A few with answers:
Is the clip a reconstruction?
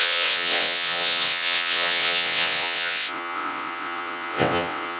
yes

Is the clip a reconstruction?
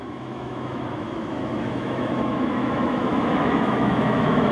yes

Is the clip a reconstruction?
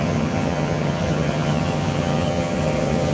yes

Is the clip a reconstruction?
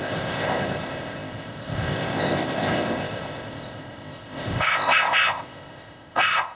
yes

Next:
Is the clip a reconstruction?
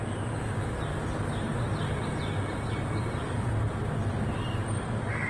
no